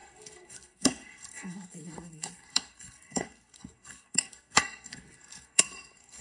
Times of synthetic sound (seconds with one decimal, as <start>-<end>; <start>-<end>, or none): 0.0-6.2